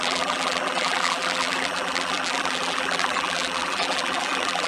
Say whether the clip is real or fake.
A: fake